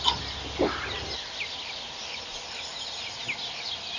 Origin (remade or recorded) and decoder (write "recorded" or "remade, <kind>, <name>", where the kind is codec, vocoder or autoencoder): recorded